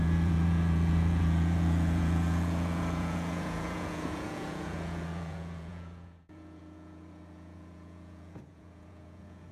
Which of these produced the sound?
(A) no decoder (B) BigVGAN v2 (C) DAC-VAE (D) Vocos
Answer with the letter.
D